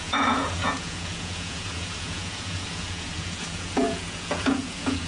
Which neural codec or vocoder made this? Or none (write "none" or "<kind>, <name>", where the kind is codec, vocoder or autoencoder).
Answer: vocoder, Vocos